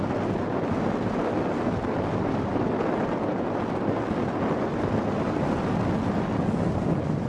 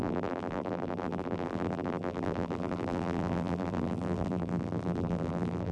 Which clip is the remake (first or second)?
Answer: second